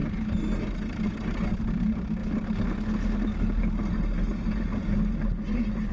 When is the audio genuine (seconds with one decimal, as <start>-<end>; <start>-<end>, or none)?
0.0-5.9

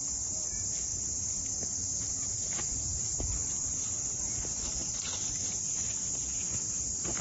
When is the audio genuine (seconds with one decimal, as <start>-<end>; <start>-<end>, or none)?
0.0-2.9; 3.9-7.2